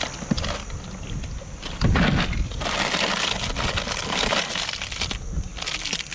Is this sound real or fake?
real